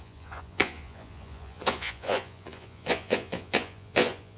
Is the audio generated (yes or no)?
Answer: yes